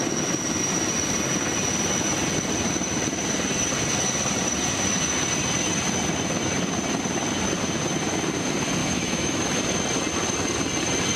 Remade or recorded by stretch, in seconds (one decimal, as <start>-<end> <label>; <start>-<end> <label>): 0.0-8.8 recorded; 8.8-9.6 remade; 9.6-11.2 recorded